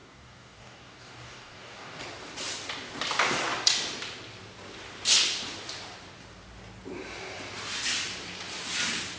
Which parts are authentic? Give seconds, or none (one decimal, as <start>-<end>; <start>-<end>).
2.0-9.2